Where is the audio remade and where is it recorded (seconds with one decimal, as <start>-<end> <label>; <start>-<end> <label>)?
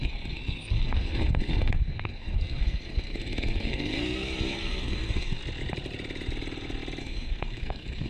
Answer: 0.0-5.4 remade; 5.4-7.0 recorded; 7.0-8.1 remade